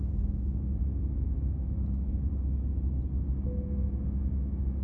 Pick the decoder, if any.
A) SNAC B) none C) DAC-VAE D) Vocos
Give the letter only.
B